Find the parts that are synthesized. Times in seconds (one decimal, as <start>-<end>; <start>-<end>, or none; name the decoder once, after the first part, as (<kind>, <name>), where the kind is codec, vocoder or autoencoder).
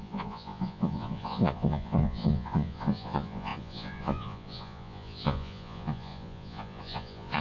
0.0-7.4 (vocoder, Vocos)